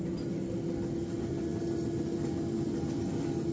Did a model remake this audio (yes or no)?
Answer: no